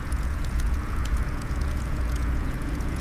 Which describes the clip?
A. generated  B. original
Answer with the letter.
A